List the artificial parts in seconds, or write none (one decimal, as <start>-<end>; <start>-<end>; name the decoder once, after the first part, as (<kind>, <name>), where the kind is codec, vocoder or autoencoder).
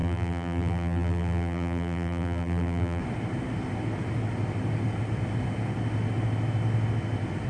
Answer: 0.0-3.0 (vocoder, BigVGAN v2)